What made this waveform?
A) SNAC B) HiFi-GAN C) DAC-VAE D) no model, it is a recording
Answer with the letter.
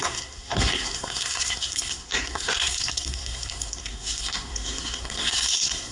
A